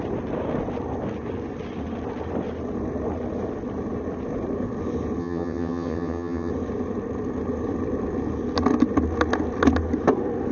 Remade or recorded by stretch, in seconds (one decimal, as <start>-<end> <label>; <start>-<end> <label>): 0.0-5.2 recorded; 5.2-6.5 remade; 6.5-10.5 recorded